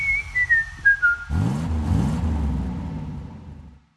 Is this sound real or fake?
real